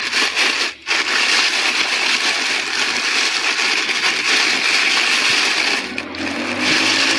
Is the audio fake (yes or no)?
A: no